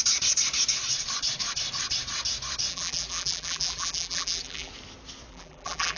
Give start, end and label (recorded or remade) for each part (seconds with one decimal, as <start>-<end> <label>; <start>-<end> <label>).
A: 0.0-2.7 recorded; 2.7-4.7 remade; 4.7-5.3 recorded; 5.3-6.0 remade